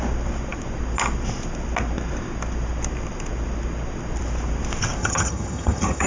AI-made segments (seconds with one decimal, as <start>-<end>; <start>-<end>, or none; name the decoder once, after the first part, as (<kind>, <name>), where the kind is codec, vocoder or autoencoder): 5.0-6.1 (vocoder, HiFi-GAN)